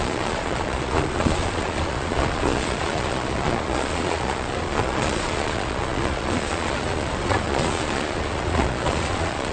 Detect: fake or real fake